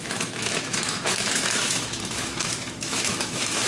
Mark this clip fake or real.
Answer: fake